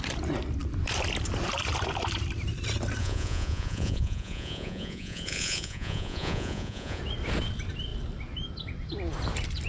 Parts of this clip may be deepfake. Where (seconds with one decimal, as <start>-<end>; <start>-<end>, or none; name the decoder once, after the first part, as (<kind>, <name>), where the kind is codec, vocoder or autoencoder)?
3.0-7.0 (vocoder, Vocos)